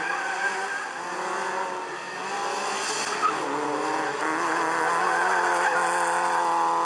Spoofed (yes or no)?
no